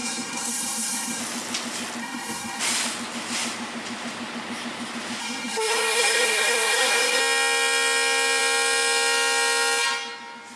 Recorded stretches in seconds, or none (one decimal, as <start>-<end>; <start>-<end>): 1.2-2.0; 2.6-5.2; 7.2-10.6